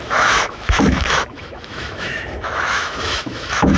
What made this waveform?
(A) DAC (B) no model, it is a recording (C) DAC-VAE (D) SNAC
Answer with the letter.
C